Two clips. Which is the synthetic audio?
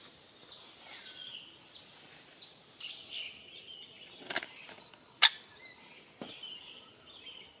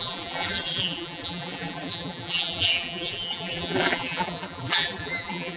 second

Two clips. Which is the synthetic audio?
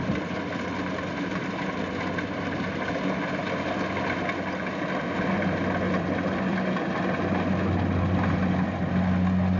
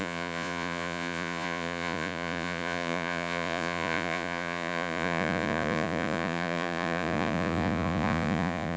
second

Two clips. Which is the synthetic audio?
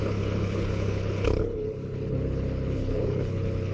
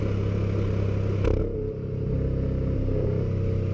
first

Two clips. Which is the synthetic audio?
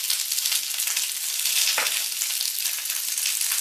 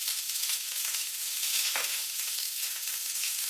second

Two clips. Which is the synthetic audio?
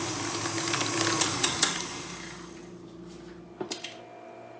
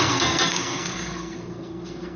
second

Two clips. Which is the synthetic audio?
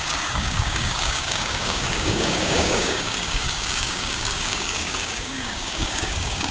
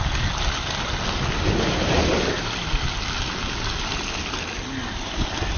first